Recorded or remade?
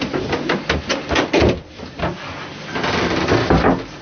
recorded